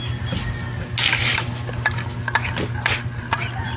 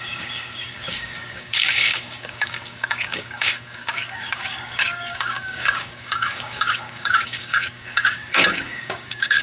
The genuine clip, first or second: first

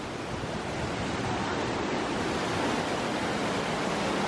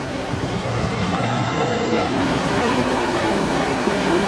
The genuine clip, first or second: first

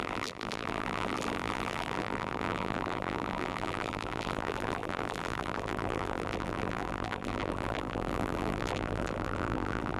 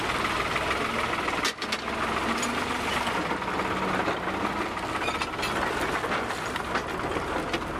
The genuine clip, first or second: second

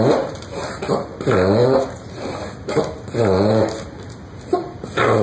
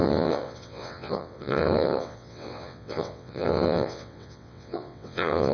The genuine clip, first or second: first